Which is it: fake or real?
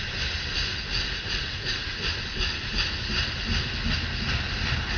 real